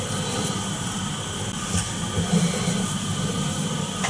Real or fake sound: real